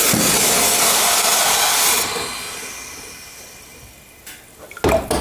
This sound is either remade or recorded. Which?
recorded